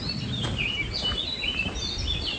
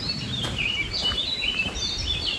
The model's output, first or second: second